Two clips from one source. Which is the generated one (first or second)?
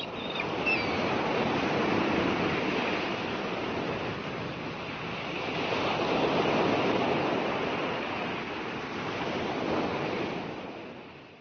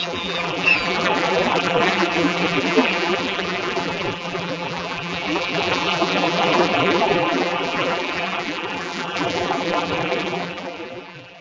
second